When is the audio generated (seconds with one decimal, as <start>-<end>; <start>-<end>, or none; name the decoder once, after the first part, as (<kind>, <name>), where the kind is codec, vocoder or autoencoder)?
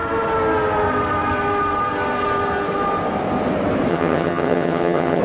3.9-5.2 (vocoder, HiFi-GAN)